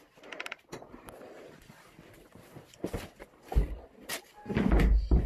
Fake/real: real